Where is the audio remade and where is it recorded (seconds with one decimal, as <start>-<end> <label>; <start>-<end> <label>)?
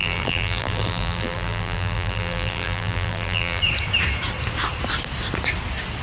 0.0-3.6 remade; 3.6-6.0 recorded